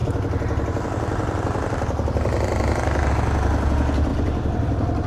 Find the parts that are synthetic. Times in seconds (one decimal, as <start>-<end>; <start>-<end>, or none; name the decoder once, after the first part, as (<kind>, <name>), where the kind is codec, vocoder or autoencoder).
0.0-3.1 (vocoder, BigVGAN v2); 4.1-5.1